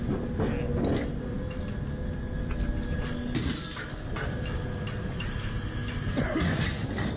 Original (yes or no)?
yes